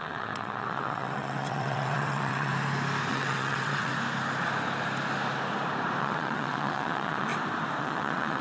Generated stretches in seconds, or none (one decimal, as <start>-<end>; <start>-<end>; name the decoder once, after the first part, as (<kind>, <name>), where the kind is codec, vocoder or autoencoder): 0.0-2.5 (vocoder, WaveNeXt); 3.1-3.9; 6.0-7.3; 7.8-8.4